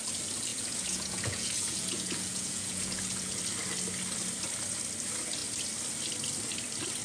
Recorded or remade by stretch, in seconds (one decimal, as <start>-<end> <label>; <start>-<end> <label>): 0.0-0.5 recorded; 0.5-3.4 remade; 3.4-7.0 recorded